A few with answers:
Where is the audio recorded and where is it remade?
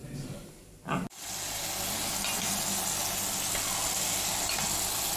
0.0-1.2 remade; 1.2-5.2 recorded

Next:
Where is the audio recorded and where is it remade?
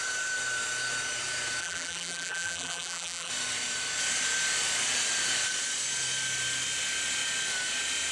0.0-1.6 recorded; 1.6-3.3 remade; 3.3-8.1 recorded